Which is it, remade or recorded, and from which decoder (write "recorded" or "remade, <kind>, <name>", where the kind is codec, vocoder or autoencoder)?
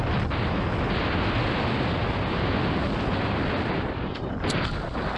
recorded